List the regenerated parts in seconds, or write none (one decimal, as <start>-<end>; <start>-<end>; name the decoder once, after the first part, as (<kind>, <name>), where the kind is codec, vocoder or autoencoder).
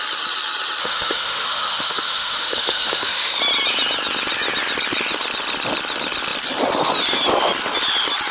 0.8-3.4 (autoencoder, DAC-VAE)